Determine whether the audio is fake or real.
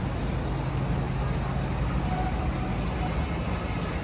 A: real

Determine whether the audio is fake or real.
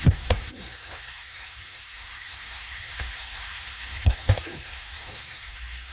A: fake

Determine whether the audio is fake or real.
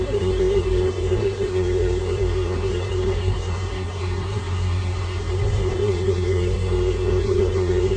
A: fake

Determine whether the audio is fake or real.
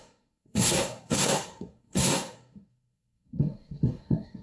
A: fake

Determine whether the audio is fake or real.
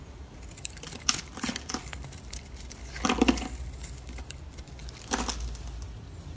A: real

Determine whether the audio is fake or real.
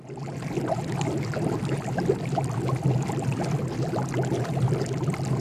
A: real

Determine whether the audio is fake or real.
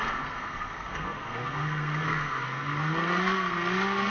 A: fake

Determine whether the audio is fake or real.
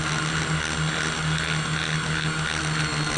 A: real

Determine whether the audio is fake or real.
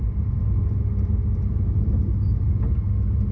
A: real